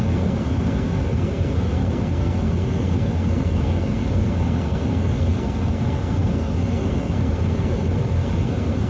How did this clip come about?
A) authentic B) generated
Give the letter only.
B